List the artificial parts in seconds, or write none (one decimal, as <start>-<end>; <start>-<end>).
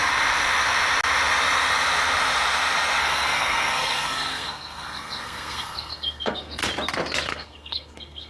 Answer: 3.0-6.6; 7.3-8.3